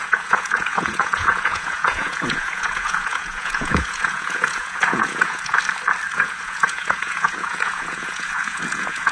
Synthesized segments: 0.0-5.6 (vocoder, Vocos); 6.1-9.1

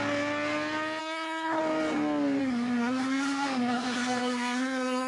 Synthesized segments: 1.0-1.6 (codec, SNAC); 2.4-5.1

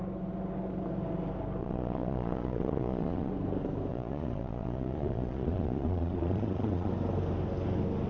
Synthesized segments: 1.6-3.3 (vocoder, Vocos); 3.9-6.9